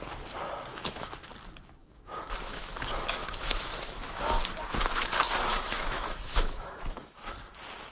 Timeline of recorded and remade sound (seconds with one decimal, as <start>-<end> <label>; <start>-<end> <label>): 0.0-0.7 recorded; 0.7-1.3 remade; 1.3-1.8 recorded; 1.8-2.7 remade; 2.7-3.2 recorded; 3.2-4.2 remade; 4.2-5.5 recorded; 5.5-7.2 remade; 7.2-7.9 recorded